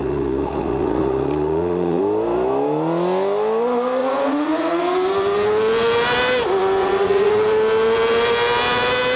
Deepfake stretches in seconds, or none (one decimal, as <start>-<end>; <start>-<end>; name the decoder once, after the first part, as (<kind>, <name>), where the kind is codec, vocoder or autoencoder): 0.0-2.0 (vocoder, Vocos); 4.0-4.8; 6.8-7.3